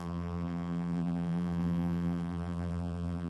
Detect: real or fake fake